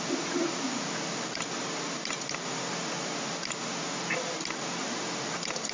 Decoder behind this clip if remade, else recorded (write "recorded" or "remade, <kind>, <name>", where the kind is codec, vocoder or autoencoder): recorded